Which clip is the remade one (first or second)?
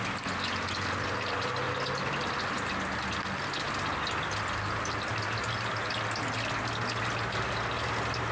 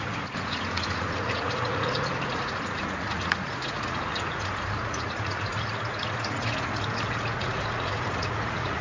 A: second